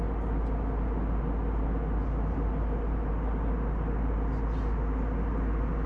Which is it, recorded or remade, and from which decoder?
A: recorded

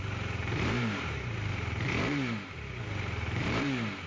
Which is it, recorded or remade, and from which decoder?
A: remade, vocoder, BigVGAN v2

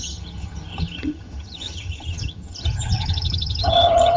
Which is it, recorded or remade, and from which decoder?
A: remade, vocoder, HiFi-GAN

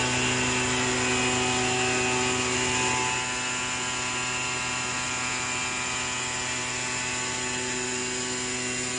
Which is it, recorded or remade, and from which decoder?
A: recorded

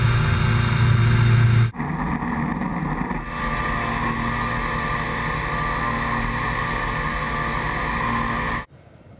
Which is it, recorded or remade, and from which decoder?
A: recorded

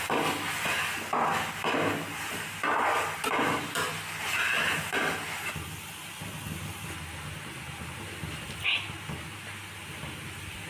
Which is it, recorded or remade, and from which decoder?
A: recorded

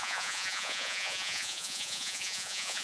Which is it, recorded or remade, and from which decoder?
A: remade, vocoder, Vocos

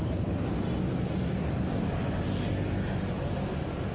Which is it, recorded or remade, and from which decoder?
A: recorded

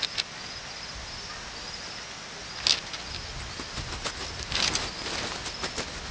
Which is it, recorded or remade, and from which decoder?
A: recorded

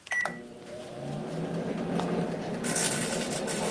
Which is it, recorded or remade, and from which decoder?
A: recorded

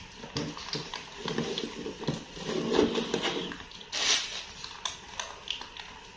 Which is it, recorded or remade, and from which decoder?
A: recorded